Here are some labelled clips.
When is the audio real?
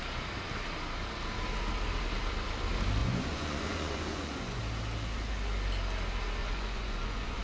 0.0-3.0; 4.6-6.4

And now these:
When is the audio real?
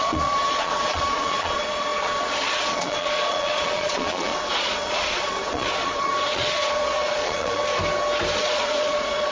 7.6-8.4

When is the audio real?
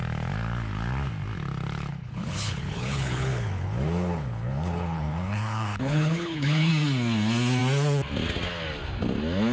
0.0-1.9; 6.7-9.5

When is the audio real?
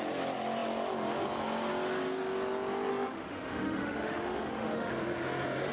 0.0-2.9; 4.9-5.7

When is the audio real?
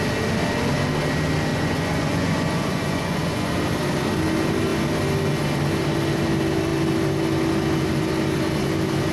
0.0-1.5; 3.5-9.1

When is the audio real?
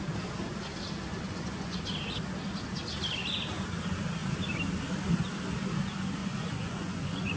0.0-1.3; 1.8-6.2